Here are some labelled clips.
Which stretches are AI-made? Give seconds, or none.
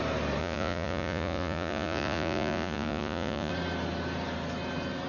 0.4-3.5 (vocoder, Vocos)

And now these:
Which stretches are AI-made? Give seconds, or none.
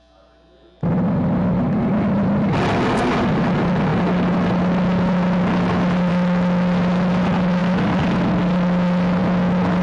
none